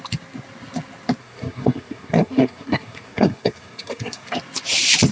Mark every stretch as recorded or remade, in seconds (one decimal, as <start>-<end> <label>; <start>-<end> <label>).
0.0-1.2 recorded; 1.2-4.3 remade; 4.3-5.1 recorded